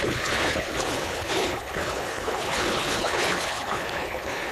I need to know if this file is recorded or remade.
remade